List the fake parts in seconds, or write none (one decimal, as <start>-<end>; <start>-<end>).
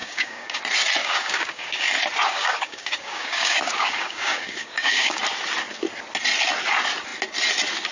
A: 0.0-0.6; 1.0-1.9; 2.3-5.2